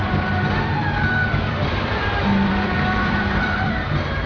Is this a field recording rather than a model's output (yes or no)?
no